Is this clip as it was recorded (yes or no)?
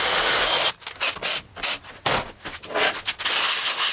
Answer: yes